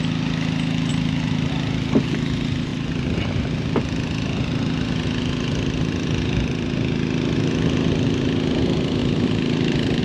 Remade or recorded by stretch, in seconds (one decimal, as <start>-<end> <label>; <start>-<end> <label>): 0.0-0.9 recorded; 0.9-1.5 remade; 1.5-9.0 recorded; 9.0-10.0 remade